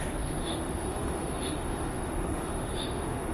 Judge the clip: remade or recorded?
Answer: remade